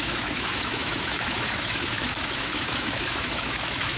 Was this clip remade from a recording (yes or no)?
yes